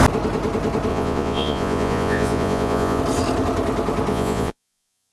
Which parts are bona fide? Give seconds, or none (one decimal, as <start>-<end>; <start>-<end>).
0.0-0.9; 3.0-4.1